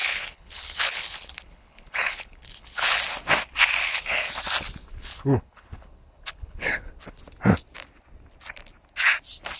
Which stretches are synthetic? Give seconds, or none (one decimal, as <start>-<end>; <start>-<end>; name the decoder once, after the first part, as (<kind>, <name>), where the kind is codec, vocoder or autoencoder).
0.0-3.0 (codec, HILCodec); 3.8-4.3; 4.8-7.2